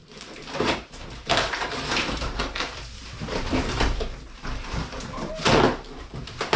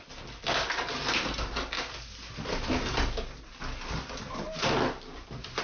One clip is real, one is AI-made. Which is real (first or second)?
second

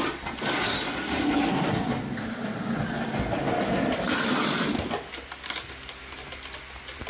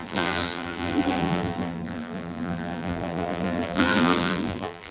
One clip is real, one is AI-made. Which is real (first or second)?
first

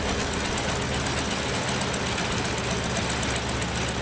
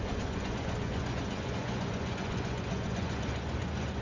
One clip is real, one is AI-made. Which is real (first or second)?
first